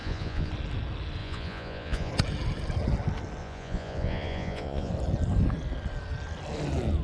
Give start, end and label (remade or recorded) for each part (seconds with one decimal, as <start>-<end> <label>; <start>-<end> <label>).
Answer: 0.0-0.5 remade; 0.5-1.2 recorded; 1.2-2.1 remade; 2.1-3.4 recorded; 3.4-4.9 remade; 4.9-7.0 recorded